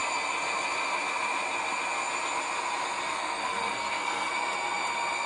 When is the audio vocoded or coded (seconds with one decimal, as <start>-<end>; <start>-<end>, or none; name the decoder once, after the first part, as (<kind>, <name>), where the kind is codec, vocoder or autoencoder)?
3.1-4.3 (codec, SNAC)